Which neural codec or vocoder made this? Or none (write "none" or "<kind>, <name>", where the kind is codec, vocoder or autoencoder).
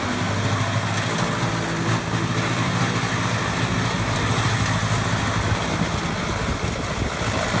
none